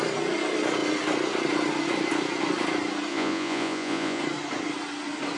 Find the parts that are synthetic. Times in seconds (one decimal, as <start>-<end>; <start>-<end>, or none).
3.1-4.2